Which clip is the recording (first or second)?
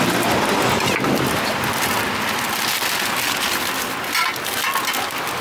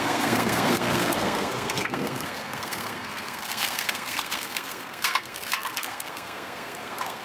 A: first